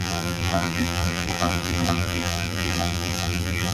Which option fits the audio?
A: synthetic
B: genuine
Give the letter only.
A